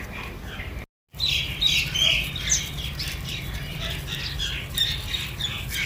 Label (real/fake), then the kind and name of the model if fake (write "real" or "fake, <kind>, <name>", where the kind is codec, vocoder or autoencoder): real